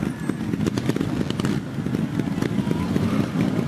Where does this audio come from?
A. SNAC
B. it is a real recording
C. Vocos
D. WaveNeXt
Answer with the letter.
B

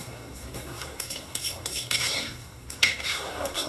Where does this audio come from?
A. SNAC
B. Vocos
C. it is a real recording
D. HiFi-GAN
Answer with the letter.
A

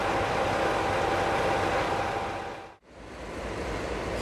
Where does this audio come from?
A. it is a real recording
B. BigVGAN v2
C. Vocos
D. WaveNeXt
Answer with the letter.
A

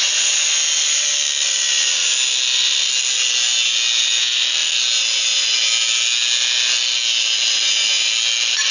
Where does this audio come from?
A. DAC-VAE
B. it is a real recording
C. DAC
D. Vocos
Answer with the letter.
B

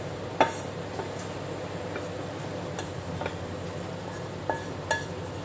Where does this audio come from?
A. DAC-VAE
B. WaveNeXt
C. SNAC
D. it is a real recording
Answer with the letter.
D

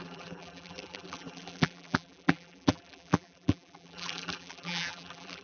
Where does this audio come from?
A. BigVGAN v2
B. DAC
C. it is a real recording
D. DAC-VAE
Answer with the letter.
A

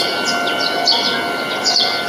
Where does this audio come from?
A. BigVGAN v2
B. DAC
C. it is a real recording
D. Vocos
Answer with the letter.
C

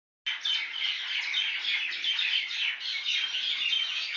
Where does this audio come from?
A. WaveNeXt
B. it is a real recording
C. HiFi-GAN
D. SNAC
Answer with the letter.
B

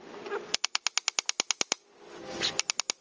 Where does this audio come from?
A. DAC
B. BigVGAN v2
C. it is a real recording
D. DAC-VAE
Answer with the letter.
C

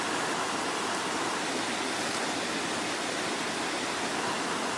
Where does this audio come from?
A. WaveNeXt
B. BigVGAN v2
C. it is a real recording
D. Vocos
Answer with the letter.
C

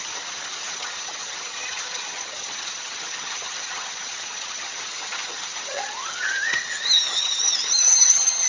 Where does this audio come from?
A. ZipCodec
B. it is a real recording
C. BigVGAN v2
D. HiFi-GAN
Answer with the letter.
D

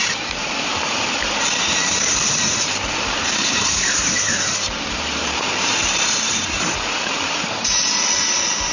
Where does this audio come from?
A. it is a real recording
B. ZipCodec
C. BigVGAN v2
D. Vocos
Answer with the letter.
C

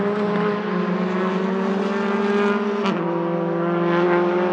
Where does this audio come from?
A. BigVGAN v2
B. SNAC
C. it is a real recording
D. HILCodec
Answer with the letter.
C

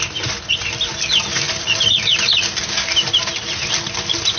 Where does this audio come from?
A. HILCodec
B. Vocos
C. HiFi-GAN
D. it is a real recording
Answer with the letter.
D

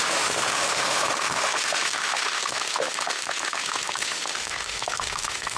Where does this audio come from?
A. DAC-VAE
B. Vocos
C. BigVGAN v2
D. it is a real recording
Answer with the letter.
A